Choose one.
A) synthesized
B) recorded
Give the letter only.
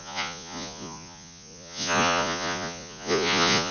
A